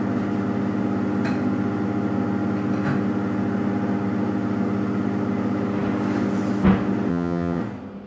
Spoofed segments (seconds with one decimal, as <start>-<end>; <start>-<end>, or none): 7.1-7.6